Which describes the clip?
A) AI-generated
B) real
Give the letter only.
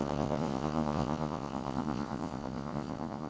A